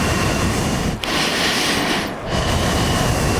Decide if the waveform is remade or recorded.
recorded